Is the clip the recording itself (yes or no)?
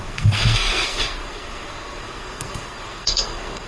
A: no